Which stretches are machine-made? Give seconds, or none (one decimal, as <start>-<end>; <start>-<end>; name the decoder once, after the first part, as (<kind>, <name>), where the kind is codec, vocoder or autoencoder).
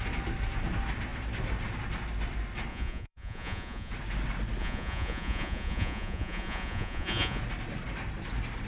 2.7-3.9 (vocoder, Vocos); 4.6-7.4